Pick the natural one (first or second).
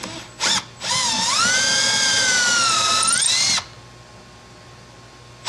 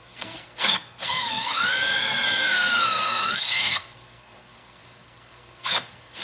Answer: first